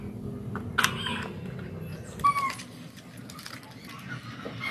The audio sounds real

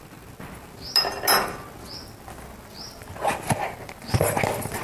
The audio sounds real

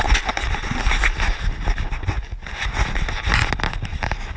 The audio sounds real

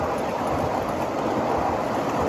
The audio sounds real